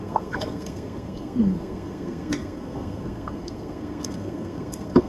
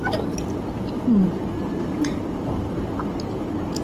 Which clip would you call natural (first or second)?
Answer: second